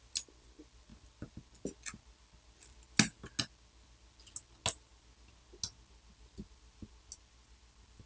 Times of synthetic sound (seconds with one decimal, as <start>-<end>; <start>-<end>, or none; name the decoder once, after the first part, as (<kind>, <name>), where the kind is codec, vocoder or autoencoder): none